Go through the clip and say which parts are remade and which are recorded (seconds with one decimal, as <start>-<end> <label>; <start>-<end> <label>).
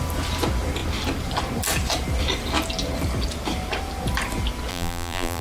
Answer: 0.0-4.7 recorded; 4.7-5.4 remade